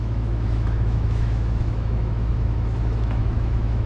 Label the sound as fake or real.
fake